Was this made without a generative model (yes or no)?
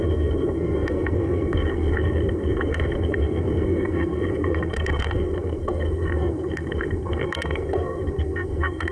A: no